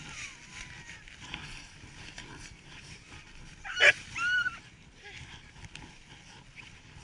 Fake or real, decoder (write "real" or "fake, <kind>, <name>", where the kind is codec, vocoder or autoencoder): real